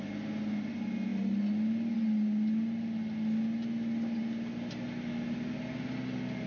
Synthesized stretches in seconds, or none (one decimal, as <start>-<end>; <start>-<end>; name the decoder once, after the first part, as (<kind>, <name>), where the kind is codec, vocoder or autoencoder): none